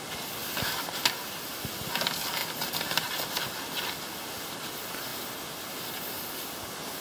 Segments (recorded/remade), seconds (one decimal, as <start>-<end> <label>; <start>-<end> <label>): 0.0-2.4 recorded; 2.4-3.1 remade; 3.1-7.0 recorded